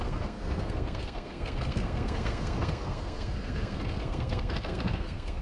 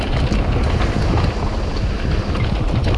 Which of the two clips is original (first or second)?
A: second